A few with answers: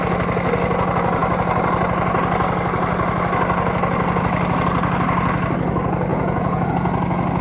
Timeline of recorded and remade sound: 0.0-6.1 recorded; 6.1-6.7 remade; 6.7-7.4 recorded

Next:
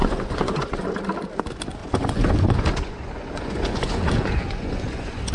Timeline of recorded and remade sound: 0.0-1.0 remade; 1.0-1.8 recorded; 1.8-5.3 remade

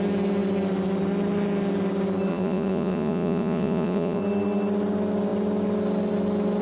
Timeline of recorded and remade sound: 0.0-2.3 recorded; 2.3-4.2 remade; 4.2-6.6 recorded

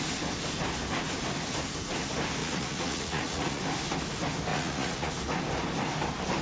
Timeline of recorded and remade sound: 0.0-2.4 recorded; 2.4-3.6 remade; 3.6-4.5 recorded; 4.5-5.1 remade; 5.1-6.4 recorded

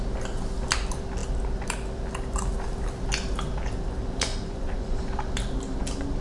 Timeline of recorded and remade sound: 0.0-4.3 recorded; 4.3-5.0 remade; 5.0-6.2 recorded